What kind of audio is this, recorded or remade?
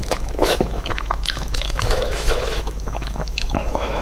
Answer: remade